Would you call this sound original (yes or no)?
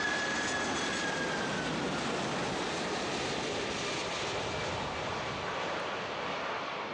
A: yes